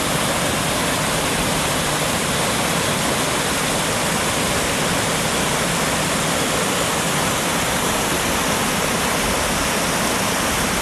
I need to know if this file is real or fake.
real